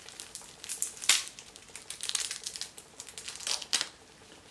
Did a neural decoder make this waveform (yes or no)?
no